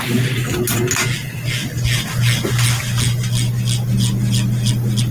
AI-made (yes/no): no